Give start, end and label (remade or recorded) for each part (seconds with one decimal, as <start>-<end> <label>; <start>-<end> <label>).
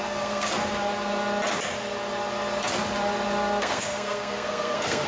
0.0-0.5 remade; 0.5-3.6 recorded; 3.6-5.1 remade